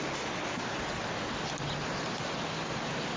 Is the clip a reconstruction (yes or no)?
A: no